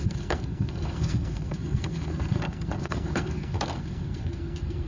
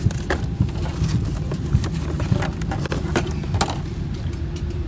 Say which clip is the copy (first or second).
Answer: first